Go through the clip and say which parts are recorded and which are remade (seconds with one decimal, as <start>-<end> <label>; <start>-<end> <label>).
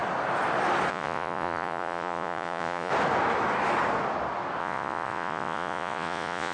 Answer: 0.0-0.9 recorded; 0.9-2.9 remade; 2.9-4.6 recorded; 4.6-6.5 remade